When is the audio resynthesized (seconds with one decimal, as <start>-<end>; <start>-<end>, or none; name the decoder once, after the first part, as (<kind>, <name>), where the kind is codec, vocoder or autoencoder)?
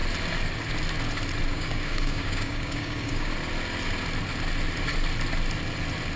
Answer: 1.5-3.3 (codec, DAC)